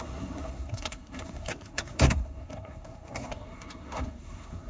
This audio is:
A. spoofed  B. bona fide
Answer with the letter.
A